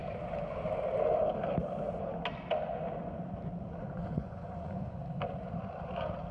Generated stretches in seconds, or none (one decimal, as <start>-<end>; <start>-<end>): 3.8-5.0